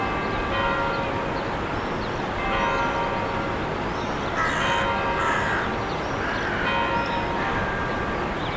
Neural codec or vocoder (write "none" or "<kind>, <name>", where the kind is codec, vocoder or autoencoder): none